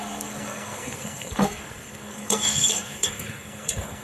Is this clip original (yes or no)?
no